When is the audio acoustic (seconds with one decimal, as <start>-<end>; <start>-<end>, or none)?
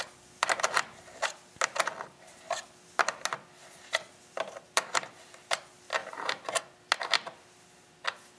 0.0-6.0; 6.6-8.4